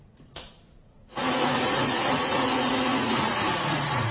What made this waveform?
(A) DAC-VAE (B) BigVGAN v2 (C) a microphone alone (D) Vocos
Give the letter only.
D